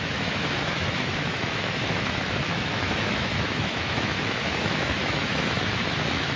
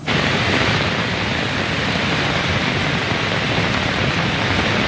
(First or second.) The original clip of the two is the second